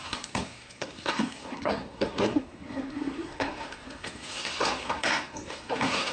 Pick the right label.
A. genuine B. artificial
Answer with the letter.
B